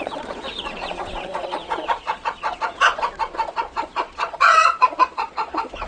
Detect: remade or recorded remade